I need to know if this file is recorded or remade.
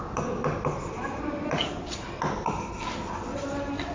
recorded